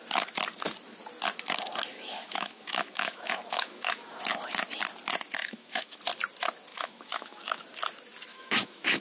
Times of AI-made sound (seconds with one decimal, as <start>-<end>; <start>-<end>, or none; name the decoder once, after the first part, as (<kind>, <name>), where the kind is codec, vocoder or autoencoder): 1.9-4.2 (autoencoder, DAC-VAE); 5.4-6.0; 6.7-7.6; 8.3-9.0